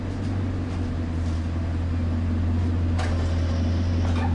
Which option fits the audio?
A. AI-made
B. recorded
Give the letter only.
B